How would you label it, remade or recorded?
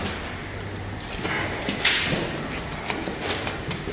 recorded